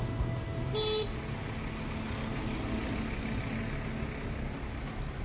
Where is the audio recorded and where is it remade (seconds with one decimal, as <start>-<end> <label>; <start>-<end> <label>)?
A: 0.0-5.2 recorded